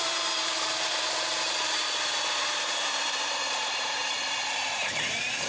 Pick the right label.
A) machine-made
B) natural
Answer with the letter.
A